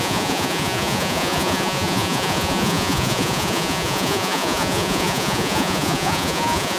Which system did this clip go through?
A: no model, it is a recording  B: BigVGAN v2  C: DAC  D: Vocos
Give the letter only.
D